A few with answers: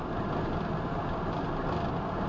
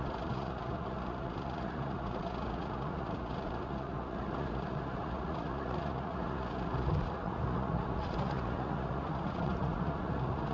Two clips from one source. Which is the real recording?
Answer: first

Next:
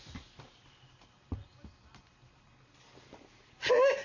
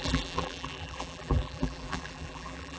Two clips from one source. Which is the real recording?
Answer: first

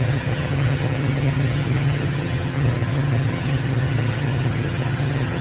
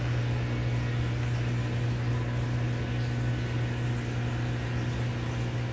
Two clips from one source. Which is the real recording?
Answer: second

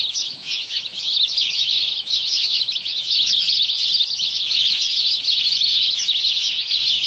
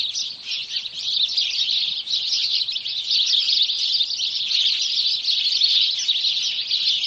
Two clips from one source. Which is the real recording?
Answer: second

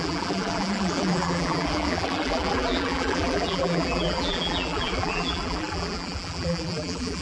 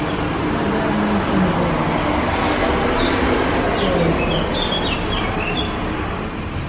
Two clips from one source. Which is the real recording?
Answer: second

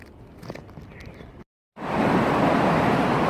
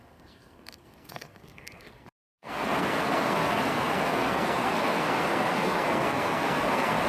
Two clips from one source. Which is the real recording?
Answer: first